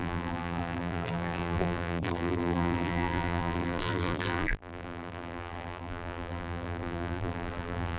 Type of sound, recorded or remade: remade